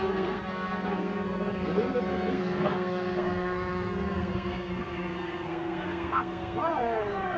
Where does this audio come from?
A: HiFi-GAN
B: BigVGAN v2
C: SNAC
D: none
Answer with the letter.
C